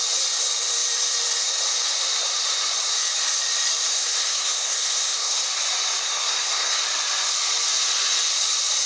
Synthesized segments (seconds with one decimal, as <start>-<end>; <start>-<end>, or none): 3.9-5.4; 6.0-6.8